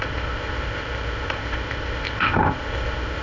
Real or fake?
fake